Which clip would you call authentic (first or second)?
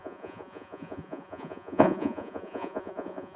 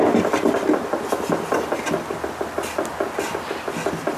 second